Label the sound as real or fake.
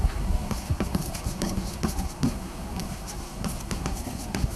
fake